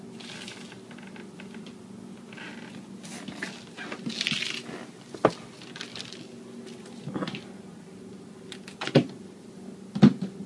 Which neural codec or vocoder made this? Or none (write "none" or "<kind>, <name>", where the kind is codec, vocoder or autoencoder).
none